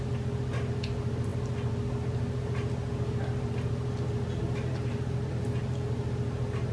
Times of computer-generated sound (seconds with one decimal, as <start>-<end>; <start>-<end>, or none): none